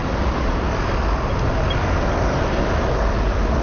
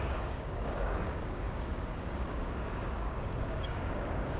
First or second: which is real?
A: first